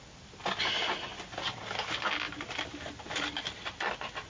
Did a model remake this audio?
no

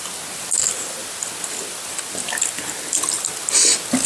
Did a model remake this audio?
no